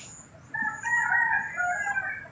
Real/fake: real